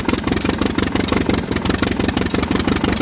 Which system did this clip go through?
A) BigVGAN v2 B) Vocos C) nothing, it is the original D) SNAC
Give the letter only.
C